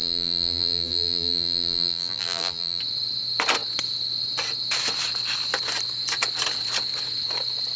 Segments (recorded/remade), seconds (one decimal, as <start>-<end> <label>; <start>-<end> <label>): 0.0-2.8 remade; 2.8-7.8 recorded